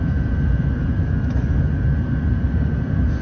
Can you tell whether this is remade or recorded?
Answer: recorded